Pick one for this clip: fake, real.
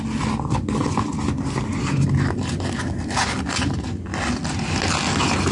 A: real